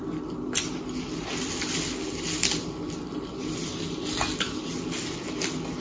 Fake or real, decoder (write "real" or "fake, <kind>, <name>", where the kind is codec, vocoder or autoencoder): real